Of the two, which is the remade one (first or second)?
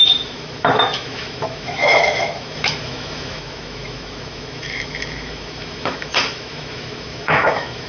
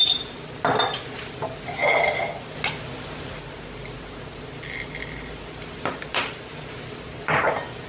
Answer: first